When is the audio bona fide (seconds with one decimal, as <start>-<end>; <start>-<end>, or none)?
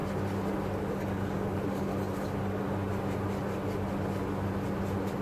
0.0-0.8; 1.9-5.2